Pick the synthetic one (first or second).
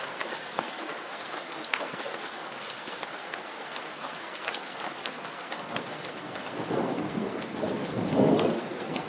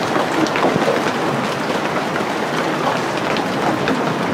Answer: first